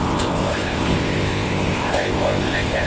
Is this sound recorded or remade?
remade